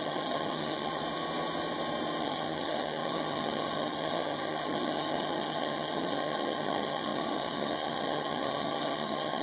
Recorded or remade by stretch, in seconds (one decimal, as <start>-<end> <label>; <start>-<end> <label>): 0.0-1.0 remade; 1.0-2.2 recorded; 2.2-9.4 remade